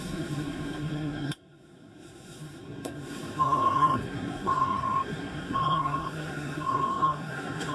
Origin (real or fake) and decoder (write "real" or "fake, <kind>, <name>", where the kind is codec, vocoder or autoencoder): fake, codec, SNAC